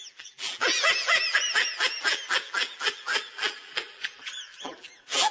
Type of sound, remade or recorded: remade